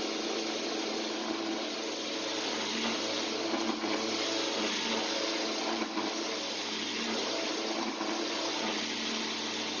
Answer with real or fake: real